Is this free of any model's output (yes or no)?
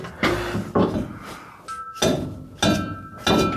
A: yes